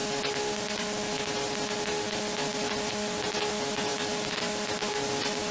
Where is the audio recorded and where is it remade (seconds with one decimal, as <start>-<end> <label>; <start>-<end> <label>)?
0.0-5.5 recorded